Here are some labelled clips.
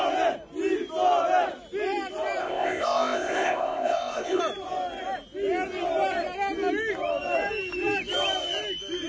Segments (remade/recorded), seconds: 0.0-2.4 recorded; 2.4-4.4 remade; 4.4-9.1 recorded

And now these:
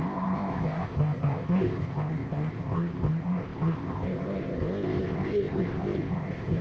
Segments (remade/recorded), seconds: 0.0-6.6 remade

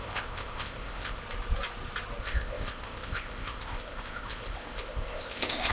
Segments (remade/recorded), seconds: 0.0-1.2 remade; 1.2-2.2 recorded; 2.2-5.7 remade